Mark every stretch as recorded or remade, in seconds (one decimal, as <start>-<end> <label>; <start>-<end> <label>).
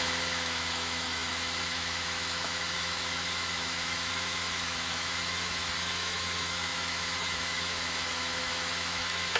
0.0-9.4 remade